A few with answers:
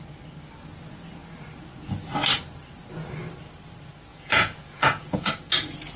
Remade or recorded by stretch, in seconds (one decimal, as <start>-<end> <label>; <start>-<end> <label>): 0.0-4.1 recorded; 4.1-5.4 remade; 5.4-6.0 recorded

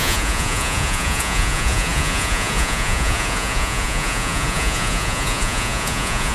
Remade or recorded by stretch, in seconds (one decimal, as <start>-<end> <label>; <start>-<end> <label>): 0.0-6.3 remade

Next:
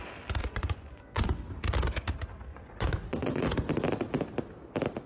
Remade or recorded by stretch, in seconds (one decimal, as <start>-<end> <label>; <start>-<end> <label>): 0.0-0.4 recorded; 0.4-1.4 remade; 1.4-2.5 recorded; 2.5-3.4 remade; 3.4-5.1 recorded